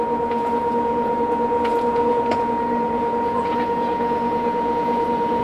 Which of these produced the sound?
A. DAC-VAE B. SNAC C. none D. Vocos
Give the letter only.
D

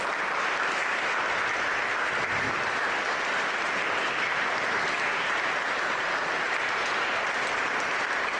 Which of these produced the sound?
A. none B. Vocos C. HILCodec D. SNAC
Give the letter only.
A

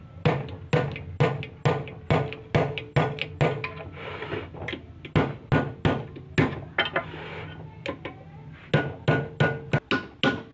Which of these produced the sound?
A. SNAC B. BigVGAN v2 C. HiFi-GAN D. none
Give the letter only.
D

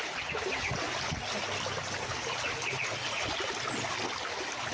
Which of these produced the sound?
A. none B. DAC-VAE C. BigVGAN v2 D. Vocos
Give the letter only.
A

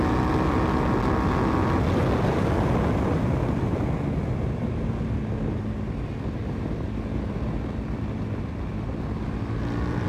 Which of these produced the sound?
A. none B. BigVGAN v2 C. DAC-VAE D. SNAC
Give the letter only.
A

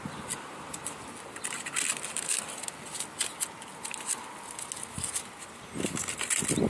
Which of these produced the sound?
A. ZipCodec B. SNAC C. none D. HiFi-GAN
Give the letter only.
C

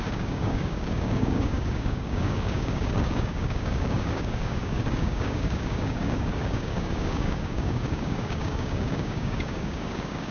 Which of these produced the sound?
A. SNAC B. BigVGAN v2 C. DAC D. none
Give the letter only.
C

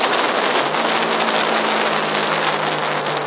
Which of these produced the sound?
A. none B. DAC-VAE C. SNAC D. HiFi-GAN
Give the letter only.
A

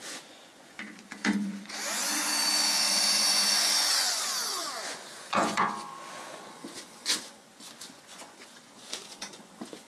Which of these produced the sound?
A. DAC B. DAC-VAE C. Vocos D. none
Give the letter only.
C